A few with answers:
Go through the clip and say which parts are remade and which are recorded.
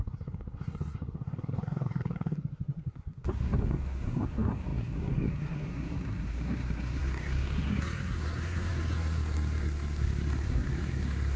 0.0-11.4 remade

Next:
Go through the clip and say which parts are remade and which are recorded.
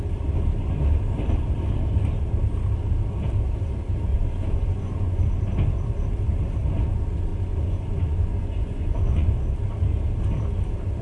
0.0-4.1 recorded; 4.1-5.2 remade; 5.2-7.3 recorded; 7.3-9.4 remade; 9.4-11.0 recorded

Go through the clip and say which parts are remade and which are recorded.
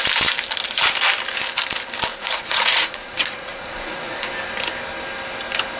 0.0-2.1 recorded; 2.1-4.3 remade; 4.3-5.8 recorded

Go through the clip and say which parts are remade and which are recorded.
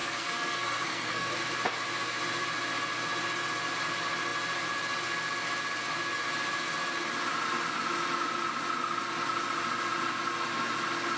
0.0-1.3 remade; 1.3-11.2 recorded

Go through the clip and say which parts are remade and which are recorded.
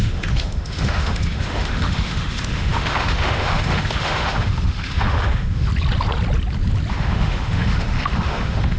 0.0-5.7 remade; 5.7-6.9 recorded; 6.9-8.8 remade